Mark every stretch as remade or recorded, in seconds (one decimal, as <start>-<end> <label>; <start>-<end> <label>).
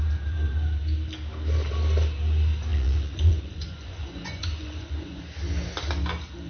0.0-2.7 recorded; 2.7-5.2 remade; 5.2-6.5 recorded